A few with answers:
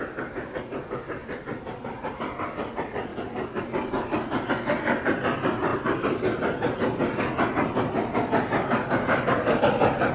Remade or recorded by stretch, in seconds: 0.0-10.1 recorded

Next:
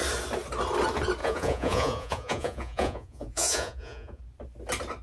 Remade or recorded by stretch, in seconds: 0.0-1.2 recorded; 1.2-4.2 remade; 4.2-5.0 recorded

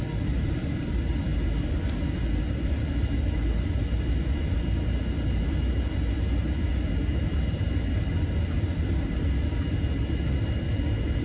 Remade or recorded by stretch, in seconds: 0.0-11.2 recorded